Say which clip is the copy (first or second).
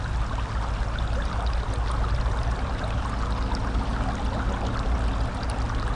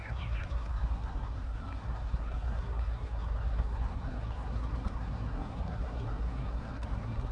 second